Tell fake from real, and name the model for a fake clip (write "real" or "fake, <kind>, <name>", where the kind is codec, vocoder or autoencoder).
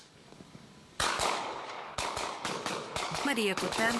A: fake, codec, DAC